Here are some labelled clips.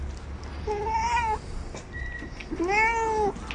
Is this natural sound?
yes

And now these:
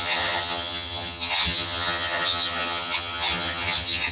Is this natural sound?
no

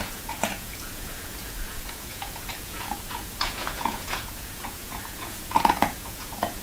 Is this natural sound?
no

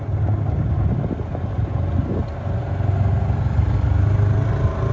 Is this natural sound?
yes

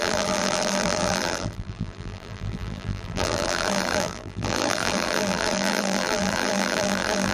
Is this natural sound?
no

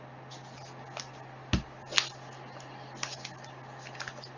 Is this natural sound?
yes